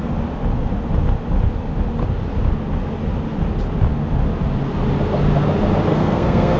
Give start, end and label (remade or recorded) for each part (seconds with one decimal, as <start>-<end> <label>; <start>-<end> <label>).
0.0-5.9 recorded; 5.9-6.6 remade